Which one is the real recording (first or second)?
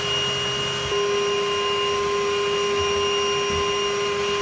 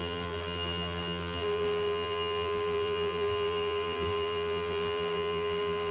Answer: first